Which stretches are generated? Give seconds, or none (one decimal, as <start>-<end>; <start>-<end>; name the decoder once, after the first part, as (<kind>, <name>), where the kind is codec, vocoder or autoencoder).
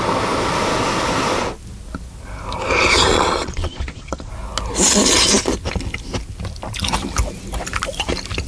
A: 3.1-4.3 (vocoder, Vocos)